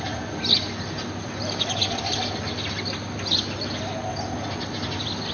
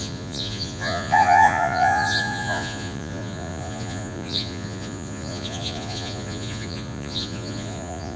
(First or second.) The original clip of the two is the first